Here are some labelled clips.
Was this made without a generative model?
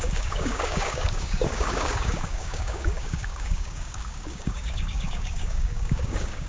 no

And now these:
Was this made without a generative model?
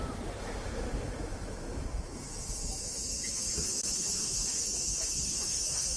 no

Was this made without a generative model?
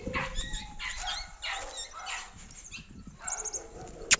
yes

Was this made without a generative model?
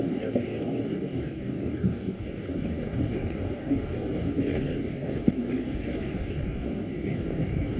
no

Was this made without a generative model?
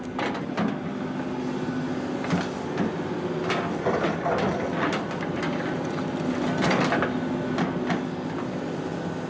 yes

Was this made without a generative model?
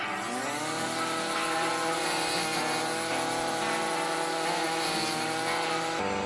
yes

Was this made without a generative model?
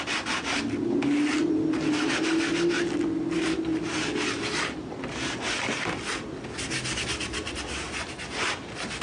yes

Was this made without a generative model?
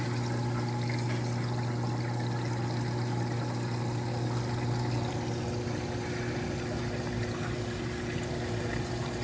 yes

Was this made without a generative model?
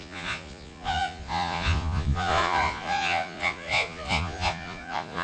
no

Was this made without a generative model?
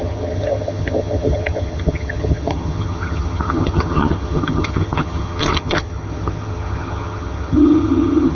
no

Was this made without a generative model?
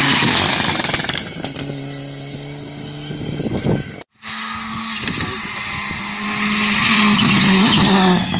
yes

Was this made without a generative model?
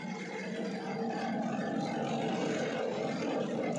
yes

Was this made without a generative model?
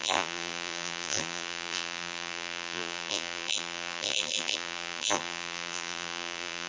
no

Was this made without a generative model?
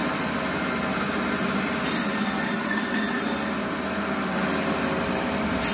no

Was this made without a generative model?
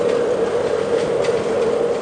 yes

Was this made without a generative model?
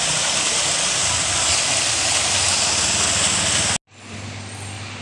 yes